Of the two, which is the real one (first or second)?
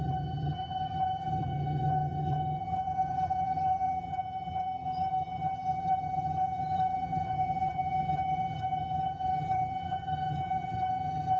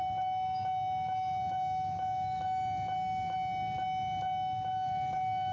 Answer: second